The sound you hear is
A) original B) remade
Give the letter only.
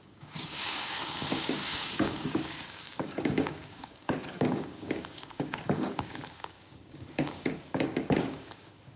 B